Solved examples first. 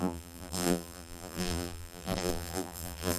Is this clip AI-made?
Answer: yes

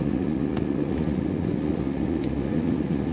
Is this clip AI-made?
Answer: yes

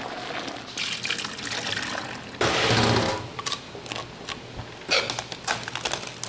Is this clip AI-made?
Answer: no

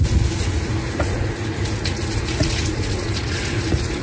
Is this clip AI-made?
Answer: yes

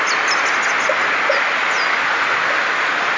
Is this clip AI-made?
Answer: no